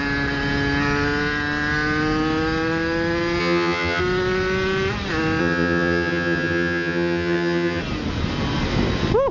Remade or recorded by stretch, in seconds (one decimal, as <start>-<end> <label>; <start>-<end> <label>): 0.0-3.4 recorded; 3.4-4.0 remade; 4.0-5.4 recorded; 5.4-7.8 remade; 7.8-9.3 recorded